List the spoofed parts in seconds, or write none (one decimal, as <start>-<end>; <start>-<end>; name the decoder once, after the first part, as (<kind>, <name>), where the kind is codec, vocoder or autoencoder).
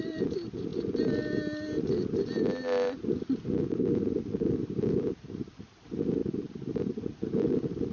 0.0-0.7 (vocoder, BigVGAN v2); 3.5-6.2; 6.7-7.9